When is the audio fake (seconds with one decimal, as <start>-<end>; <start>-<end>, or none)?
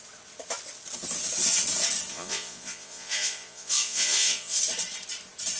2.1-4.6